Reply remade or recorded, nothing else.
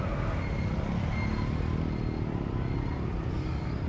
recorded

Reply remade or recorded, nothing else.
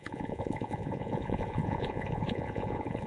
remade